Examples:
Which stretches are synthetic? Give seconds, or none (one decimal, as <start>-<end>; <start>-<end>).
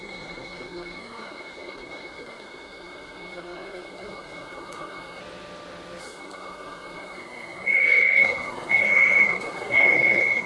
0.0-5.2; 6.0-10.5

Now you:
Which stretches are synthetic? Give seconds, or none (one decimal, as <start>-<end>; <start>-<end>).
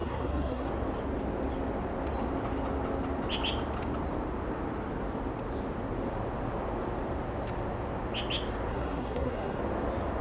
0.0-0.7; 8.7-9.6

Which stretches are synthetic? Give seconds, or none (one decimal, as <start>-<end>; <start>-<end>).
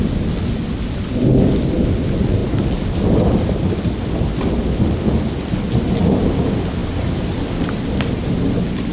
none